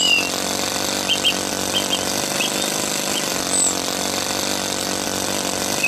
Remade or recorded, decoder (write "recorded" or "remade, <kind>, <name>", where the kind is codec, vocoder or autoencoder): recorded